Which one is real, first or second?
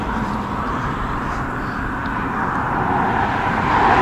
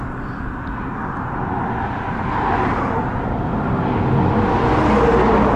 second